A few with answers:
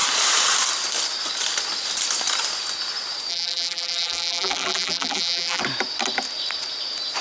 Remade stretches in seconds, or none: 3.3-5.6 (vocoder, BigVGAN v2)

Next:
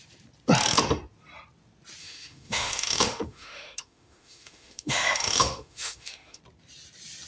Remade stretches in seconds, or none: 2.0-6.4 (autoencoder, DAC-VAE)